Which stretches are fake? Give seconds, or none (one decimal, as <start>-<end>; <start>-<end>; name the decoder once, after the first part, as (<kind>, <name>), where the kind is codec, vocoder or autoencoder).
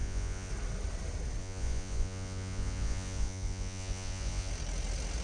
0.0-0.5 (vocoder, Vocos); 1.4-4.5